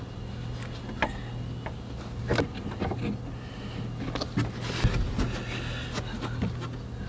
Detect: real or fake real